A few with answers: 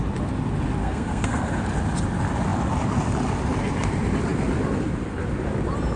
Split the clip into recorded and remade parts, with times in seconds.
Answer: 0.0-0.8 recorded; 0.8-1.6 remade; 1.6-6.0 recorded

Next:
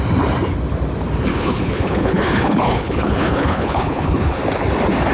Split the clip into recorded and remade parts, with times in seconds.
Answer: 0.0-1.3 recorded; 1.3-4.4 remade; 4.4-5.1 recorded

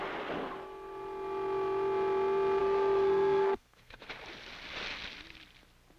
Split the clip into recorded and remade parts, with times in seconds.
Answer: 0.0-2.6 recorded; 2.6-4.1 remade; 4.1-6.0 recorded

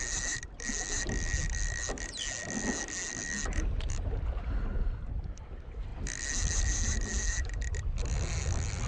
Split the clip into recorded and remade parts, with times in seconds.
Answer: 0.0-8.9 recorded